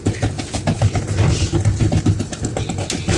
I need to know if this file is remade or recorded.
recorded